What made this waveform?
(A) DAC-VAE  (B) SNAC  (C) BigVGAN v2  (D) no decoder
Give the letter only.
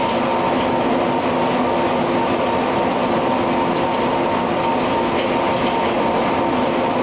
D